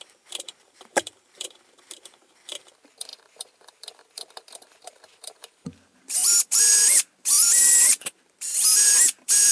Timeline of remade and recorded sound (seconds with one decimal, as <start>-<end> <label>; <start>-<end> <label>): 0.0-9.5 remade